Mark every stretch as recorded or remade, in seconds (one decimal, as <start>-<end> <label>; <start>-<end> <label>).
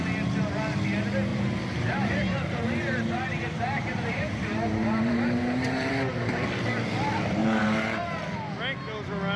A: 0.0-1.3 recorded; 1.3-5.9 remade; 5.9-7.4 recorded; 7.4-8.0 remade; 8.0-9.4 recorded